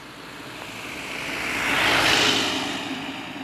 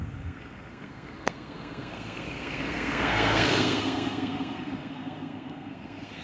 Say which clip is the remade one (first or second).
second